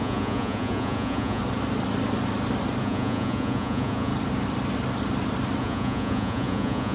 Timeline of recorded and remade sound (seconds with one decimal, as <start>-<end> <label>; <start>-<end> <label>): 0.0-1.4 remade; 1.4-2.8 recorded; 2.8-4.1 remade; 4.1-5.6 recorded; 5.6-6.9 remade